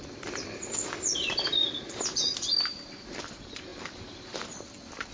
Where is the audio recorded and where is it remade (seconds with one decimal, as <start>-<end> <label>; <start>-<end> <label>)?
0.0-1.3 recorded; 1.3-5.1 remade